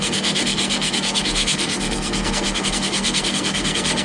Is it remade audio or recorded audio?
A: remade